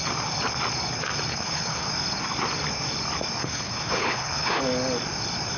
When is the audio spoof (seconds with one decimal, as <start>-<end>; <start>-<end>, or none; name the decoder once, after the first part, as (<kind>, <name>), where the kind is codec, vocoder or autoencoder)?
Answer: 1.3-1.9 (codec, HILCodec); 3.4-4.6